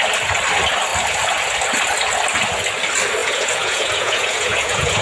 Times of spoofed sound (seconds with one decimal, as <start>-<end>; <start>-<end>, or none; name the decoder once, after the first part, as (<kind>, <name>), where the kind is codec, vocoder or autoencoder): 3.2-5.0 (vocoder, Vocos)